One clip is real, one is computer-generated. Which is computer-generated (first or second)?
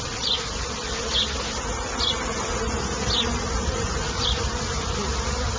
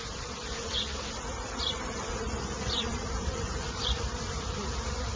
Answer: second